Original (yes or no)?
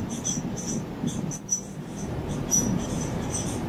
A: no